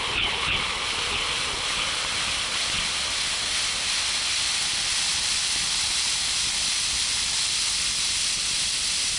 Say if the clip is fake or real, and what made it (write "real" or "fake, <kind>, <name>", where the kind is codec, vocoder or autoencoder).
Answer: real